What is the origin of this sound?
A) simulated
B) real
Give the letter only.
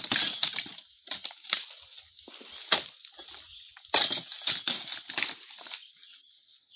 B